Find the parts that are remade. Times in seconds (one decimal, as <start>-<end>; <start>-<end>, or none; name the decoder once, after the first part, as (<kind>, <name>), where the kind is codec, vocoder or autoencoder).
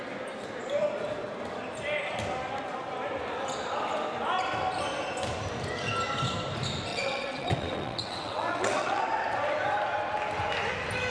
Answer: 6.9-9.0 (vocoder, WaveNeXt)